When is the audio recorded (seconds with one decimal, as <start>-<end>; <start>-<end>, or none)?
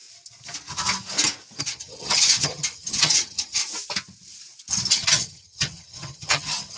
0.0-1.6; 3.6-4.9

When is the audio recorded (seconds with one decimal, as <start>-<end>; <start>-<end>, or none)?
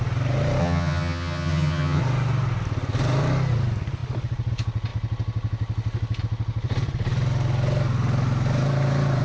0.0-0.6; 2.0-9.2